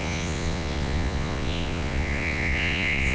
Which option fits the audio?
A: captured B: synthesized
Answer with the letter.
B